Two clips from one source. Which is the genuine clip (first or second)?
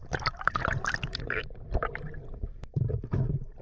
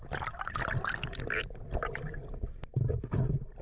second